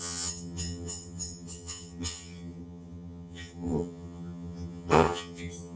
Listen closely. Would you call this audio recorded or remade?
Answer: remade